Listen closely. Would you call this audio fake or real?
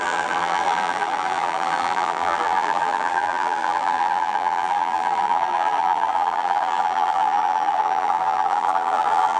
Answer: fake